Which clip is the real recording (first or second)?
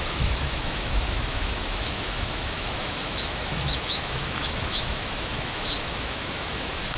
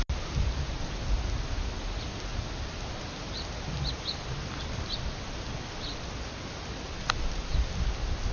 second